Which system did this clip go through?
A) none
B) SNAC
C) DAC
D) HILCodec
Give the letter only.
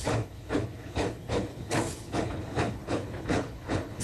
D